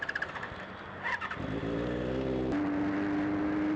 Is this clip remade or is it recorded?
recorded